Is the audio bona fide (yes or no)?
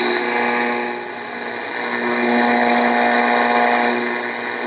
yes